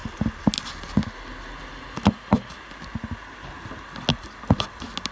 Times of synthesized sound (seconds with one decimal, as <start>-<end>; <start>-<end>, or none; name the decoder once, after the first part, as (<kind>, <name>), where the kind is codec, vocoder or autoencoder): none